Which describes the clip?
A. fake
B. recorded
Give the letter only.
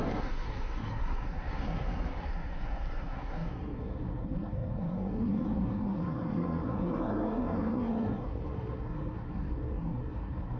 A